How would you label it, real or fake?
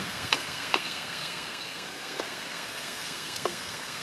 fake